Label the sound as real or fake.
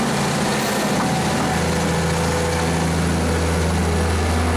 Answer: real